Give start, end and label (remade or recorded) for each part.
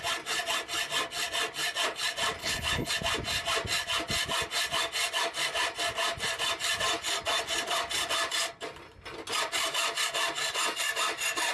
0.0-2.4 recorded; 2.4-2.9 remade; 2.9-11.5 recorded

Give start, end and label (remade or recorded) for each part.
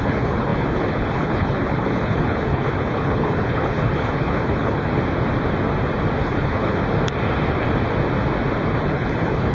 0.0-4.9 remade; 4.9-6.2 recorded; 6.2-6.8 remade; 6.8-8.8 recorded; 8.8-9.5 remade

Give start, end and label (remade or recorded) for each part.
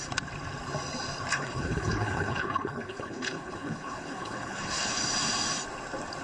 0.0-1.3 recorded; 1.3-5.0 remade; 5.0-6.2 recorded